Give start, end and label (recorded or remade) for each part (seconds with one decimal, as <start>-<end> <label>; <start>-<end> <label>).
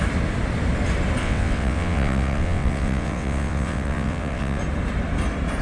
0.0-1.2 recorded; 1.2-4.6 remade; 4.6-5.6 recorded